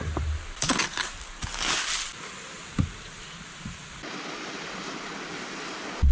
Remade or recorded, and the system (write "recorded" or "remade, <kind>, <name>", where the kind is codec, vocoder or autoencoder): recorded